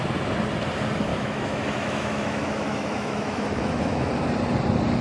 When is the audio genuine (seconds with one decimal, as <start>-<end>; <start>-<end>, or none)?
0.0-1.1; 4.1-5.0